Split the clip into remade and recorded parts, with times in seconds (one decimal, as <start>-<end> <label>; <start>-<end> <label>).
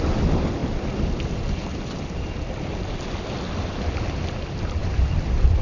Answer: 0.0-4.8 recorded; 4.8-5.6 remade